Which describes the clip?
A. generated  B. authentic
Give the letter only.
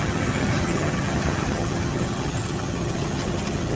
A